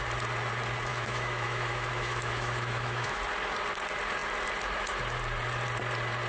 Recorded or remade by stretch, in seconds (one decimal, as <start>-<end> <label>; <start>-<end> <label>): 0.0-0.9 recorded; 0.9-3.2 remade; 3.2-6.3 recorded

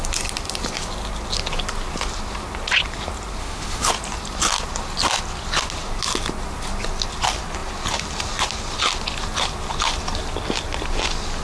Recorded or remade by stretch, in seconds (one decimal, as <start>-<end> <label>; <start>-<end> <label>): 0.0-3.4 recorded; 3.4-3.9 remade; 3.9-11.4 recorded

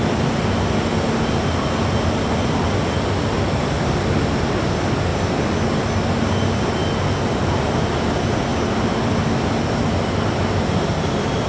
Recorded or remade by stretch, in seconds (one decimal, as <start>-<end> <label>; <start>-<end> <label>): 0.0-11.5 recorded

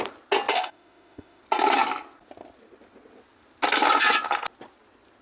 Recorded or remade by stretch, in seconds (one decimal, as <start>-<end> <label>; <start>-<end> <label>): 0.0-0.5 recorded; 0.5-1.4 remade; 1.4-5.2 recorded